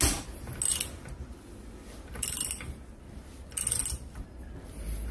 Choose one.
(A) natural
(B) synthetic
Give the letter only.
A